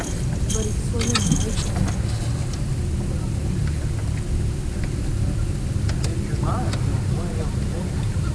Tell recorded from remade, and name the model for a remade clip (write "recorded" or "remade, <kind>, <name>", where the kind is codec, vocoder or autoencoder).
recorded